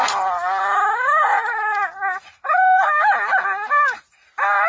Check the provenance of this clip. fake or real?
real